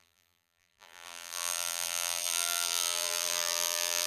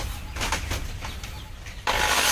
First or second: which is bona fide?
second